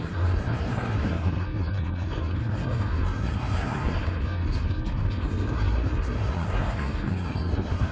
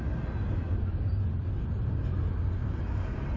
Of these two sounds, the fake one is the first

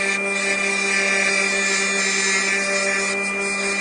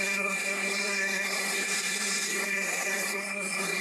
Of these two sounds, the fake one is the second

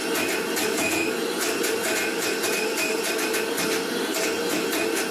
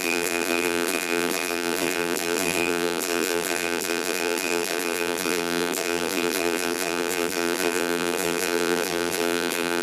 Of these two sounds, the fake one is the second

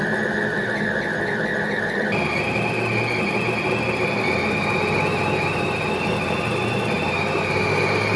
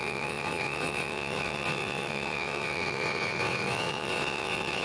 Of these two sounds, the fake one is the second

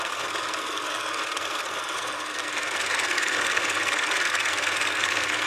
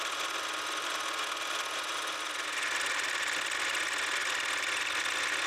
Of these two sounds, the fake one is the first